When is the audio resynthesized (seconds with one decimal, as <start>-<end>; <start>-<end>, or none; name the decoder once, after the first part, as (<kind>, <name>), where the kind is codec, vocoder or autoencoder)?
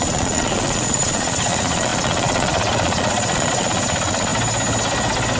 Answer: 0.0-4.3 (vocoder, Vocos)